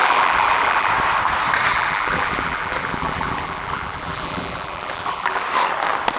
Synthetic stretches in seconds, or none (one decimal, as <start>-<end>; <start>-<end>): 0.0-0.9; 1.7-5.4